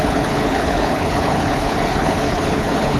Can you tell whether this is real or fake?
fake